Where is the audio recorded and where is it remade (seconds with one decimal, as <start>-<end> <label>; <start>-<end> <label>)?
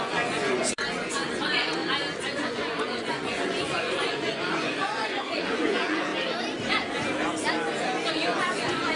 0.0-1.8 remade; 1.8-2.4 recorded; 2.4-6.1 remade; 6.1-8.1 recorded; 8.1-9.0 remade